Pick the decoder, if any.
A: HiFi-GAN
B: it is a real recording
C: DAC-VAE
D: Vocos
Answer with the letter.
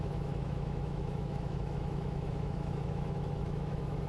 C